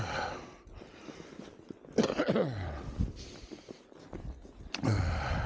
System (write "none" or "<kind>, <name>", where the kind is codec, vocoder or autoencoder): none